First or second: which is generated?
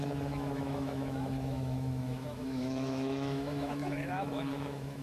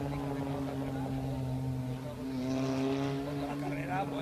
first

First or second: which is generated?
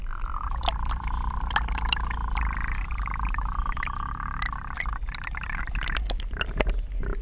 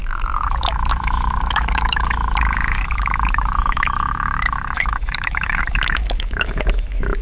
second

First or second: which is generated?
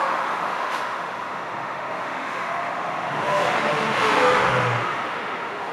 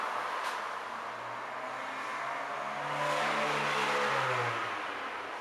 first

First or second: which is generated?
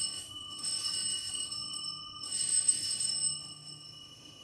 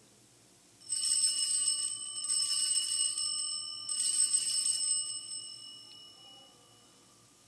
first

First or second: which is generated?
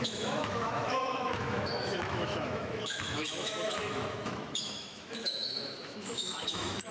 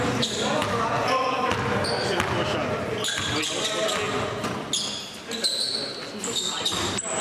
first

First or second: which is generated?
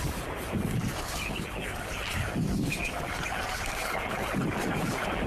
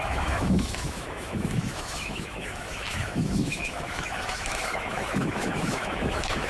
second